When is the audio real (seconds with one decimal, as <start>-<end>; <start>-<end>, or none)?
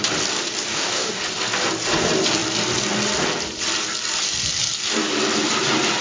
0.0-0.7; 1.2-6.0